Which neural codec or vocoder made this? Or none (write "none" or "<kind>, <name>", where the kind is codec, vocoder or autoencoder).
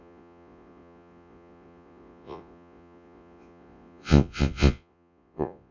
vocoder, Vocos